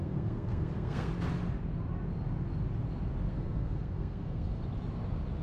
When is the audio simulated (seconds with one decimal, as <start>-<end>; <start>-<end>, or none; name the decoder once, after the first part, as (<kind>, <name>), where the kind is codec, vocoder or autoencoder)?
0.0-1.1 (codec, SNAC); 3.3-4.6